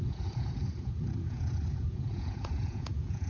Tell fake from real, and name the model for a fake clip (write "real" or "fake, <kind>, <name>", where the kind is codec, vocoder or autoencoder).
fake, vocoder, Vocos